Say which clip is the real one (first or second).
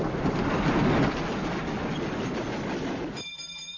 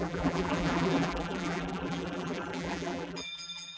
first